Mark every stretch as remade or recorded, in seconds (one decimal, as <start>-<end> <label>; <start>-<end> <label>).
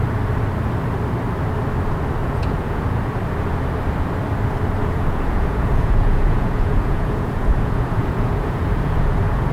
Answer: 0.0-2.2 recorded; 2.2-3.2 remade; 3.2-4.8 recorded; 4.8-9.5 remade